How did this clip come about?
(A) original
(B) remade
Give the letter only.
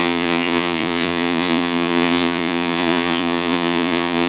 B